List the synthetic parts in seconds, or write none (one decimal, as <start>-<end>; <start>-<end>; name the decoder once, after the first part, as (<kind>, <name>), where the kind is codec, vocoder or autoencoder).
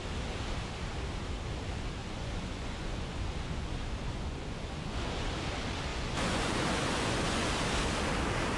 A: 2.0-5.3 (vocoder, Vocos); 5.9-7.5